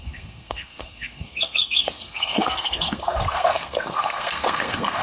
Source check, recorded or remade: remade